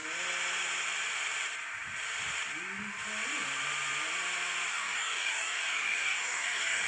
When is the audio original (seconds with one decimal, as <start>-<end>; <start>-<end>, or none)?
0.0-4.7

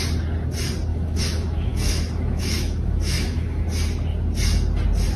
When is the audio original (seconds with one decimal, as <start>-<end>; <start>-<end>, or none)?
0.0-0.9; 3.6-5.2

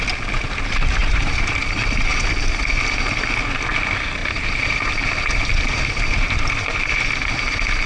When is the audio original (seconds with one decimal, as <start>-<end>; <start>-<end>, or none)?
0.0-1.0; 1.6-2.1; 2.6-4.2; 7.1-7.9

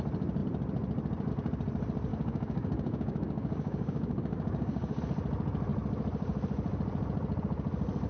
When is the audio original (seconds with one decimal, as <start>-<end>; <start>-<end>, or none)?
0.0-2.1; 5.0-8.1

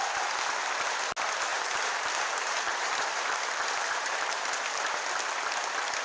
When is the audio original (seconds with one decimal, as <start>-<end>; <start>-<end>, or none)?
0.0-1.5; 5.1-6.0

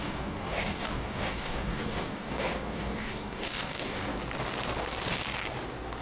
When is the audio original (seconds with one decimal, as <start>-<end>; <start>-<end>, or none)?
4.1-6.0

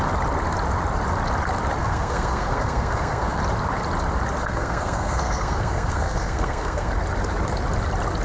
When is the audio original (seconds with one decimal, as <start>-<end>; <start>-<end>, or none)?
0.0-1.8; 3.4-4.4; 6.9-8.2

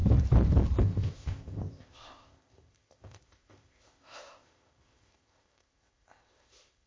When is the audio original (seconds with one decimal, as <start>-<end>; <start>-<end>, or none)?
0.0-0.8